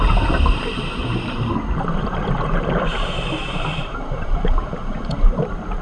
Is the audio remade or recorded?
remade